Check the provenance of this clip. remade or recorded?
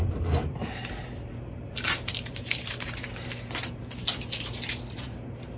remade